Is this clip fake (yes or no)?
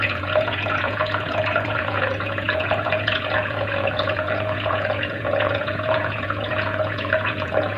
yes